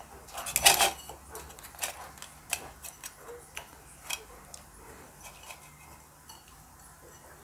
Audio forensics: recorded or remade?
recorded